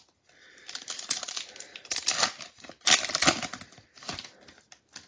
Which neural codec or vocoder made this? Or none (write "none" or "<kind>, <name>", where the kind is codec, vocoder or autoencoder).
none